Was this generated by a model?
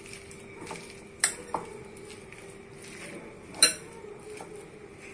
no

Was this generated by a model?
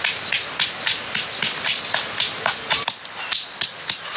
no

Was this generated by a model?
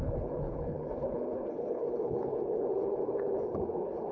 yes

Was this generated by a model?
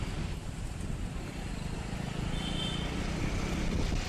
no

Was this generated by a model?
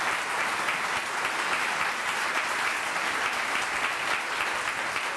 no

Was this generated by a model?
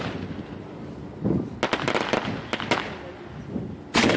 no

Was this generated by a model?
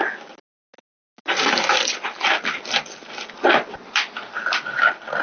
no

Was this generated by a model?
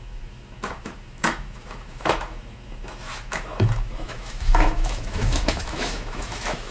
yes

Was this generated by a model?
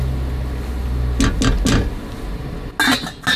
no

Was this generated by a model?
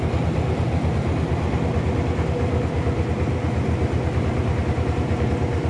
no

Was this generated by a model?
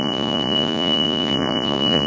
yes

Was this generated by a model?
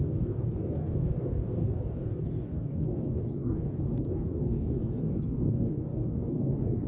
yes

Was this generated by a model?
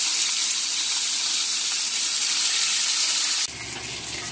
no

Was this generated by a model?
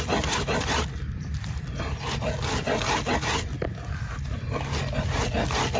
no